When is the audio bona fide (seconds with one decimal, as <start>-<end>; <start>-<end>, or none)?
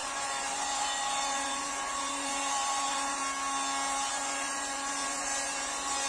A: 3.2-4.1